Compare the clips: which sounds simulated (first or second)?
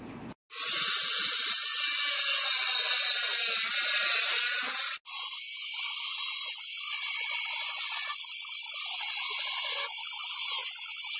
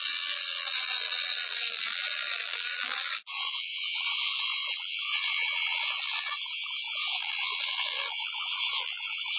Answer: second